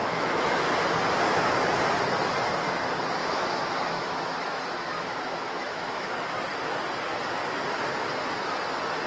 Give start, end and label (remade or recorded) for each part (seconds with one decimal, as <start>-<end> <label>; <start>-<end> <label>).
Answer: 0.0-0.6 remade; 0.6-1.3 recorded; 1.3-1.8 remade; 1.8-3.2 recorded; 3.2-6.1 remade; 6.1-9.1 recorded